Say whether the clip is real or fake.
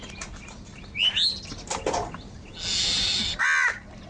real